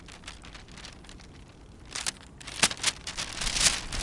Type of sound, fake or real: real